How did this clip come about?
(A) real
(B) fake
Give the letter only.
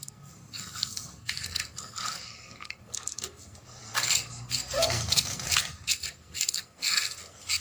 B